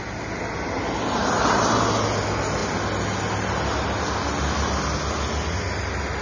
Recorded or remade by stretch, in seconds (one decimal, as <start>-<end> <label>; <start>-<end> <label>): 0.0-6.2 recorded